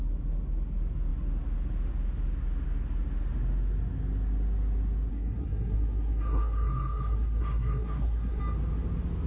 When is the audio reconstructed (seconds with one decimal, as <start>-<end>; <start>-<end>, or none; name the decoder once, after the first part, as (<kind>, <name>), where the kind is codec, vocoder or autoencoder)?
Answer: 5.1-8.4 (codec, SNAC)